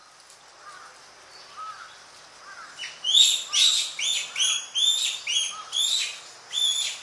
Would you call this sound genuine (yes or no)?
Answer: yes